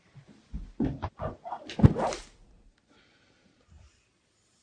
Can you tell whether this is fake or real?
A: real